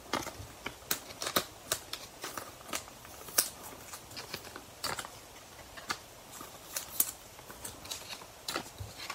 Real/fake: real